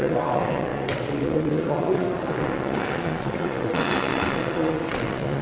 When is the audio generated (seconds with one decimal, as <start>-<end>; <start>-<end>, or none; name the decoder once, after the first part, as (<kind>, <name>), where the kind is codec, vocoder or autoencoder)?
0.0-5.4 (vocoder, WaveNeXt)